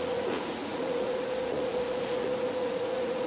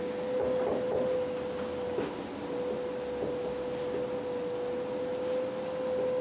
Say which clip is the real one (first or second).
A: second